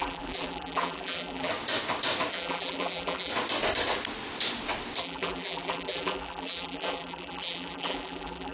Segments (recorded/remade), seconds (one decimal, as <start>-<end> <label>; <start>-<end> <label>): 0.0-1.5 remade; 1.5-2.3 recorded; 2.3-3.3 remade; 3.3-5.0 recorded; 5.0-8.5 remade